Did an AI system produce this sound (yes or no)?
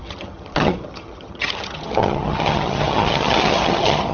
yes